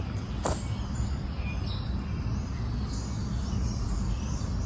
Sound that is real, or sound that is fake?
real